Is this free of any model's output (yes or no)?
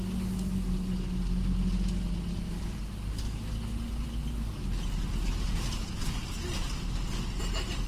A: yes